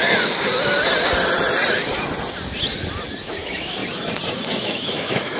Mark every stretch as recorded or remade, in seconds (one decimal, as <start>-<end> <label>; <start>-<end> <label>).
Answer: 0.0-3.2 recorded; 3.2-3.8 remade; 3.8-4.6 recorded; 4.6-5.4 remade